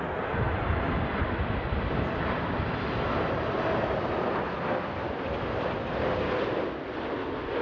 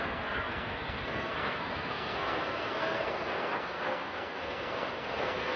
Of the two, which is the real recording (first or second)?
first